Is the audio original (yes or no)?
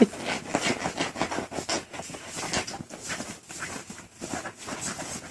yes